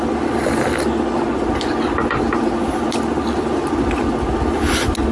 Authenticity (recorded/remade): recorded